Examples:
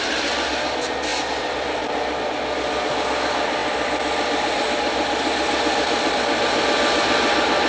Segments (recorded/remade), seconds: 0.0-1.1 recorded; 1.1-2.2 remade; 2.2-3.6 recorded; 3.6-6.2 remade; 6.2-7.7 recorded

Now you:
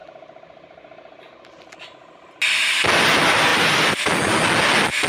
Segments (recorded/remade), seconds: 0.0-3.5 recorded; 3.5-4.2 remade; 4.2-5.1 recorded

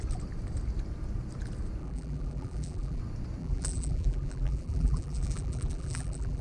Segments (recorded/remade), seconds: 0.0-1.8 recorded; 1.8-3.0 remade; 3.0-3.4 recorded; 3.4-6.4 remade

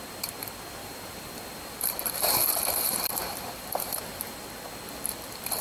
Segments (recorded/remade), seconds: 0.0-0.8 recorded; 0.8-4.0 remade; 4.0-5.6 recorded

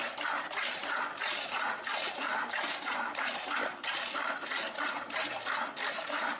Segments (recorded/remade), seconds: 0.0-5.2 remade; 5.2-6.0 recorded; 6.0-6.4 remade

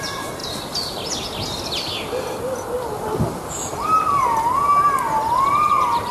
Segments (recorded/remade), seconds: 0.0-6.1 recorded